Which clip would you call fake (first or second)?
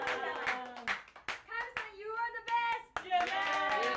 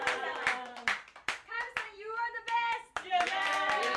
second